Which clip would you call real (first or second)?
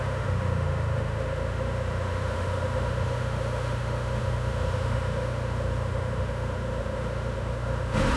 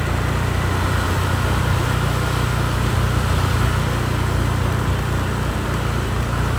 second